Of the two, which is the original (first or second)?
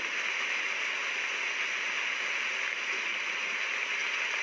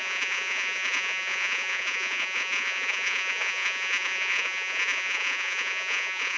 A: first